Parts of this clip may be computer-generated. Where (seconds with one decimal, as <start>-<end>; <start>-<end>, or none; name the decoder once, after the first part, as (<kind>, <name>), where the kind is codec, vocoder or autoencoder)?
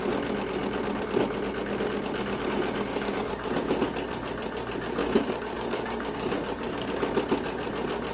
2.9-3.8 (codec, DAC); 5.0-6.9